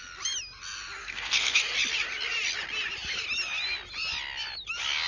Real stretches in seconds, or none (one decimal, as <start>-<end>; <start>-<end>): 0.0-1.0; 1.6-5.1